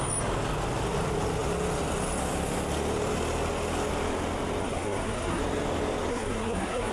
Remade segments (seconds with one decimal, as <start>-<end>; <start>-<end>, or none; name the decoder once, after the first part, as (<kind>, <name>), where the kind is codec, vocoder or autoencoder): 4.6-5.4 (codec, SNAC); 6.1-6.9